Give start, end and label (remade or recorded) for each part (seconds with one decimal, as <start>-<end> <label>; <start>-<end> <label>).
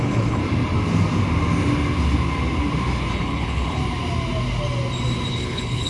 0.0-0.4 remade; 0.4-3.1 recorded; 3.1-3.8 remade; 3.8-5.3 recorded; 5.3-5.9 remade